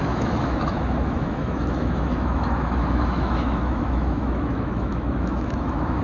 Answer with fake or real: fake